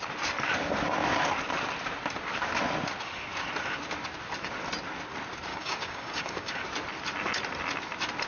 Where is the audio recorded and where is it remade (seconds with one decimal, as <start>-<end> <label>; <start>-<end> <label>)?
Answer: 0.0-5.5 recorded; 5.5-6.6 remade; 6.6-8.3 recorded

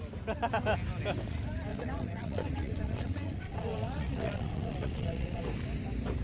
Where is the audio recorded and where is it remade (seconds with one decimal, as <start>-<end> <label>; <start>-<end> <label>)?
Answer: 0.0-1.7 recorded; 1.7-5.4 remade; 5.4-6.2 recorded

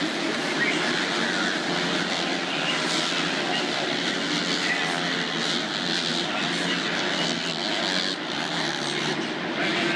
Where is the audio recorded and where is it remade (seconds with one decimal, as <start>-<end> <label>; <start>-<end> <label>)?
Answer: 0.0-10.0 recorded